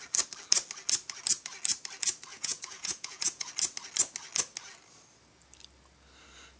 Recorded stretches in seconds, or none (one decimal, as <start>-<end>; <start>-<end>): 0.0-2.3; 3.5-6.6